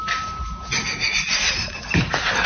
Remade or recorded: recorded